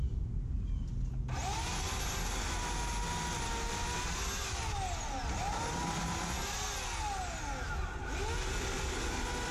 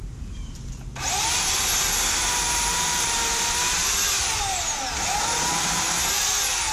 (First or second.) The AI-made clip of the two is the second